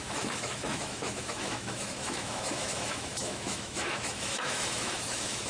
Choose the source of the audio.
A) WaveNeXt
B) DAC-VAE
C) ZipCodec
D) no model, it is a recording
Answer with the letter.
B